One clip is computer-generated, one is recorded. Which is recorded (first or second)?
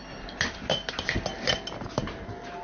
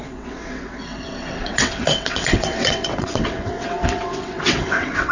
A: first